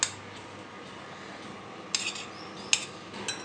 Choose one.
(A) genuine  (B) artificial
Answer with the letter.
A